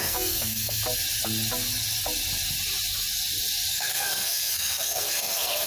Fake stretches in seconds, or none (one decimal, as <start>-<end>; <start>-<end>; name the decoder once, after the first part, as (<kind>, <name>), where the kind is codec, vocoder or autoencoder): 0.0-0.8 (codec, SNAC); 3.7-5.7